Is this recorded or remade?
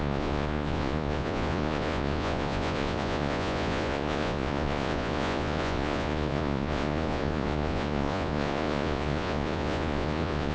remade